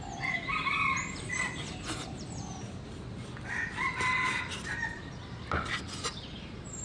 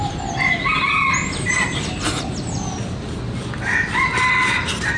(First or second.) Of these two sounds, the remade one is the first